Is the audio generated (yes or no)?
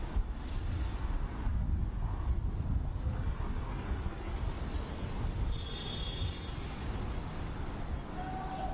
no